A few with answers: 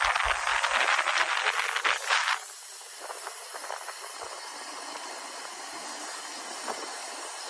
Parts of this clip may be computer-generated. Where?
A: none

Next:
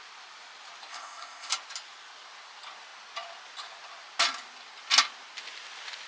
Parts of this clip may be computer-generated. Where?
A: 0.9-1.5

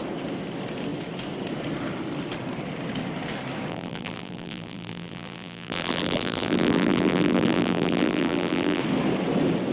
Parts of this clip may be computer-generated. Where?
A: 3.7-8.8

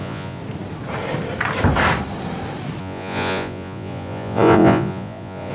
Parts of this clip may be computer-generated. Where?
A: 0.0-0.4; 2.8-5.5

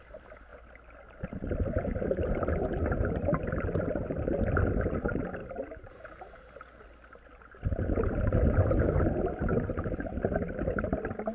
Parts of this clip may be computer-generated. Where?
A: none

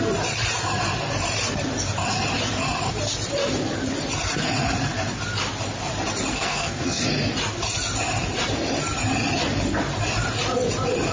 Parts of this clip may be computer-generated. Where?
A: 6.3-7.0

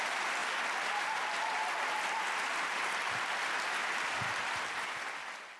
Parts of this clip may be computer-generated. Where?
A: none